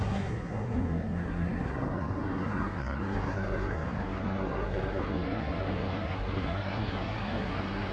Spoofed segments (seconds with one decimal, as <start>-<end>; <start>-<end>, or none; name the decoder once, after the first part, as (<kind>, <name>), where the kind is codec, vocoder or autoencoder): 0.0-7.9 (codec, SNAC)